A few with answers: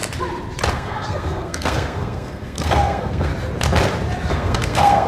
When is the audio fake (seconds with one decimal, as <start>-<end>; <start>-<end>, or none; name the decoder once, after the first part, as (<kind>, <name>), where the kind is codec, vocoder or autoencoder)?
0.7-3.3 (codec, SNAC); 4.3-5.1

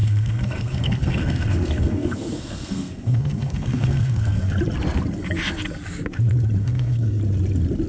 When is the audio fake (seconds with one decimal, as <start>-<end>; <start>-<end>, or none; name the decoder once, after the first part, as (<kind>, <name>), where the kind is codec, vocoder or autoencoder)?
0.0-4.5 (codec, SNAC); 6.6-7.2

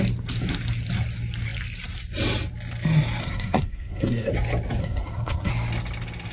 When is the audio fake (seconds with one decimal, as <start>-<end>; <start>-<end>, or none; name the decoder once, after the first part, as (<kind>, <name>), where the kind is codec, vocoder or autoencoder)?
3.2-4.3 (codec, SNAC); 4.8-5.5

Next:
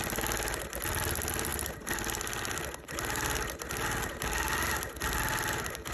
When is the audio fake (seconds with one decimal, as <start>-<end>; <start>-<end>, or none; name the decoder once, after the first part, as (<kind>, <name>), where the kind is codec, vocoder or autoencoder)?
none